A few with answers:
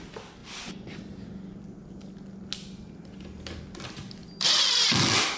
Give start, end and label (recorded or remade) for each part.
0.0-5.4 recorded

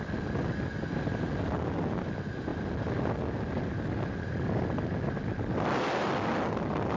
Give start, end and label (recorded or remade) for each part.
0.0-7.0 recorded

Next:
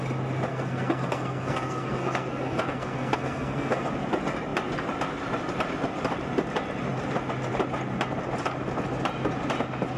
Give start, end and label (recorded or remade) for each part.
0.0-0.5 recorded; 0.5-3.9 remade; 3.9-10.0 recorded